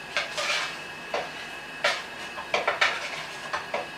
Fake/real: real